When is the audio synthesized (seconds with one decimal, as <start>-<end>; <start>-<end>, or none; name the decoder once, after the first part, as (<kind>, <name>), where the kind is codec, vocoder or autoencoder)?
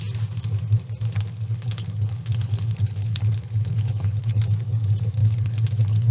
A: 1.5-4.4 (codec, HILCodec); 5.2-6.1